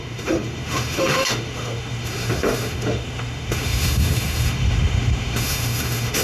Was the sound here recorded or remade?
remade